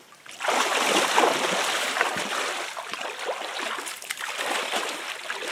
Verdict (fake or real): fake